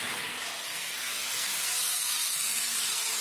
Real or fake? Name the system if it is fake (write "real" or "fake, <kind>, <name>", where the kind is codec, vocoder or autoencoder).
fake, codec, SNAC